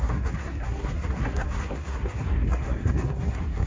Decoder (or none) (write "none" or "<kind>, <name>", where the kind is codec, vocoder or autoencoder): codec, SNAC